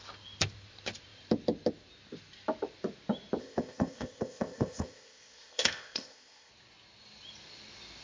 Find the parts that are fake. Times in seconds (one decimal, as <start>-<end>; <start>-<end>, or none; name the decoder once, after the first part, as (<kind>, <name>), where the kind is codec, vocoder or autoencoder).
3.4-6.5 (codec, ZipCodec)